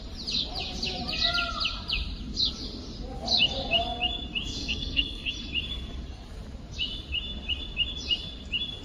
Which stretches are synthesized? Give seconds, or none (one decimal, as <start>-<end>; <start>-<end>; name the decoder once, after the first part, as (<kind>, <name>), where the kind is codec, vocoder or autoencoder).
4.5-5.3 (codec, SNAC)